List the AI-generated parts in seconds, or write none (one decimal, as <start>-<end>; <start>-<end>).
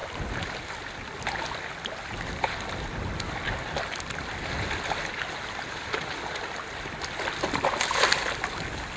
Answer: none